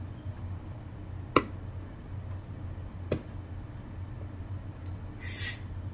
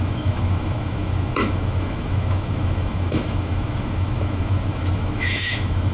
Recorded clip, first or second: first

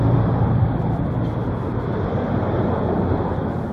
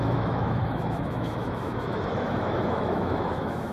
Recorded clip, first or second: first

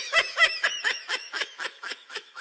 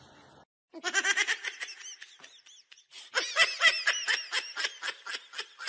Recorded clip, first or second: second